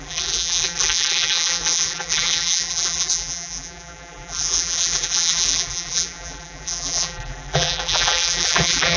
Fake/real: fake